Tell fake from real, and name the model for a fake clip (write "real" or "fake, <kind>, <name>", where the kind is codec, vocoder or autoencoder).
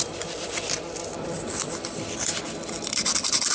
real